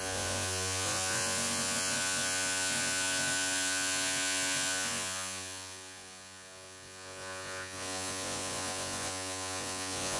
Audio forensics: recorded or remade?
remade